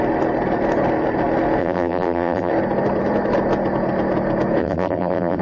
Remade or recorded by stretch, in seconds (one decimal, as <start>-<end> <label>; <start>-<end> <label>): 0.0-1.6 recorded; 1.6-2.5 remade; 2.5-4.6 recorded; 4.6-5.4 remade